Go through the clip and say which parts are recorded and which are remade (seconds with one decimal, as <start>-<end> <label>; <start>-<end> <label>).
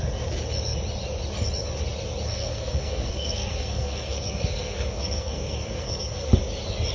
0.0-2.3 recorded; 2.3-6.4 remade; 6.4-6.9 recorded